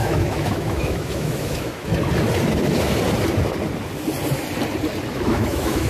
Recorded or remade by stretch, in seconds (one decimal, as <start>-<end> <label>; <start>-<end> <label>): 0.0-1.9 remade; 1.9-5.1 recorded; 5.1-5.9 remade